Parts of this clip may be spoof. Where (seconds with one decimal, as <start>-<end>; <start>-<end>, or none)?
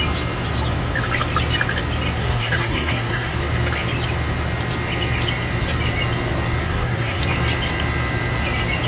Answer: 2.2-3.4; 6.6-7.2